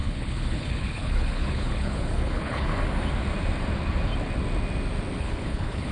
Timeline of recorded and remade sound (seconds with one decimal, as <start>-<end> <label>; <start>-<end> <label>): 0.0-2.7 remade; 2.7-5.2 recorded; 5.2-5.9 remade